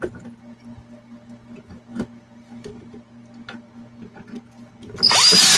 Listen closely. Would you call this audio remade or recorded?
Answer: recorded